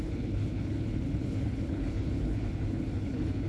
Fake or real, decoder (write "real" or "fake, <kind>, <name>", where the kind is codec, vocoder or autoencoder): fake, codec, HILCodec